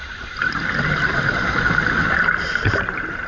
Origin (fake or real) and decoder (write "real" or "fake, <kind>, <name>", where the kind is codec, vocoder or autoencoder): real